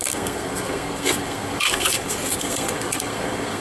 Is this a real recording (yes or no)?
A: no